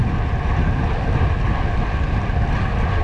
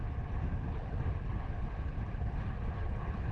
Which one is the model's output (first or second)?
second